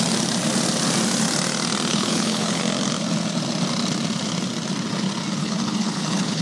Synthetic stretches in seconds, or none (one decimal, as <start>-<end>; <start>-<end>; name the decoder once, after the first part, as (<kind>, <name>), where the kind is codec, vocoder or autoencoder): 1.9-2.6 (codec, HILCodec); 5.4-6.4

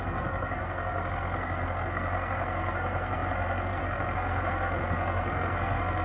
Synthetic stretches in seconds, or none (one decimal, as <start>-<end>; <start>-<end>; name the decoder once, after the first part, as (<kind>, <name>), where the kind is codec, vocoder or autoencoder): 0.0-6.0 (codec, SNAC)

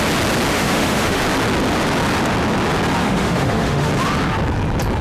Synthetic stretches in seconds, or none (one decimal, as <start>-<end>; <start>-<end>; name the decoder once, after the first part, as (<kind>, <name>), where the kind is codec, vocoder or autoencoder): 0.5-1.2 (autoencoder, DAC-VAE); 3.0-3.9